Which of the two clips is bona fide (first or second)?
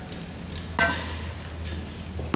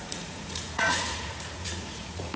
first